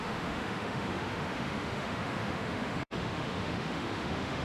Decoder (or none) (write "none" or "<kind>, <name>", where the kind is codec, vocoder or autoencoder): autoencoder, DAC-VAE